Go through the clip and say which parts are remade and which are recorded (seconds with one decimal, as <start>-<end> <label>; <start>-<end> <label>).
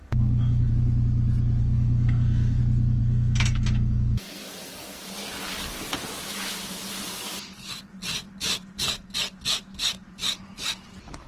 0.0-0.7 remade; 0.7-1.6 recorded; 1.6-2.6 remade; 2.6-3.0 recorded; 3.0-5.0 remade; 5.0-11.3 recorded